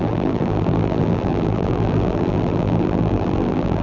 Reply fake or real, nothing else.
fake